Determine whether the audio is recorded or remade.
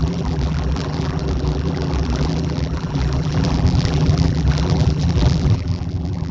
remade